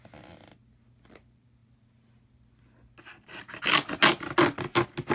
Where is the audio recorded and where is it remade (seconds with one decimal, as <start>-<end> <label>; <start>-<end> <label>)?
0.0-5.1 recorded